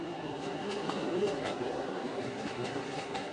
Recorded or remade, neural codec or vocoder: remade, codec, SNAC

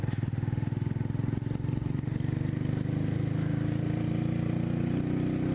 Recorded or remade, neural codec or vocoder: recorded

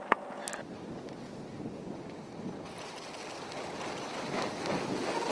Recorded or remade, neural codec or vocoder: recorded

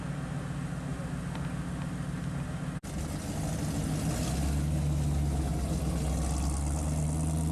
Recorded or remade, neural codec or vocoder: recorded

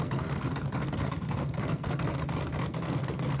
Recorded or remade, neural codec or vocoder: remade, codec, SNAC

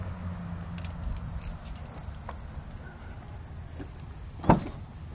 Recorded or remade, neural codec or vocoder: recorded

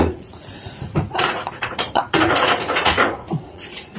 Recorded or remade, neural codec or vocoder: remade, vocoder, Vocos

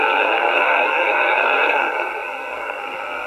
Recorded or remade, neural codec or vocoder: remade, codec, SNAC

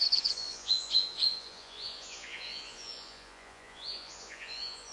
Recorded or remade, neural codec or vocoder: remade, vocoder, Vocos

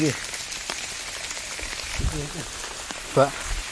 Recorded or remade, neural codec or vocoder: recorded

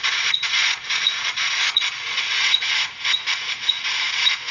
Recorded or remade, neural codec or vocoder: remade, vocoder, Vocos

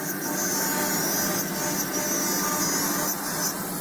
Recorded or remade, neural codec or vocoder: recorded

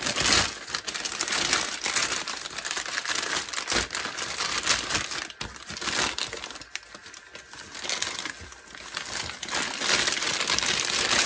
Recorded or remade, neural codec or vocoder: recorded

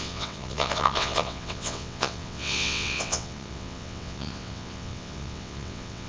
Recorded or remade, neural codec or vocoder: remade, vocoder, WaveNeXt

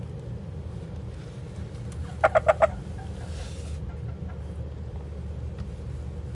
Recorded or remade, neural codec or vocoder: recorded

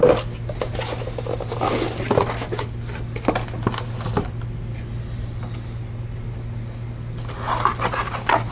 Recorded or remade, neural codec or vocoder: recorded